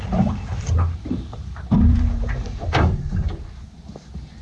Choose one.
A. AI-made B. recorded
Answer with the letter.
A